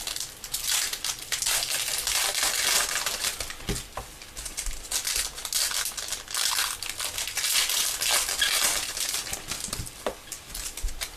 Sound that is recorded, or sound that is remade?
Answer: recorded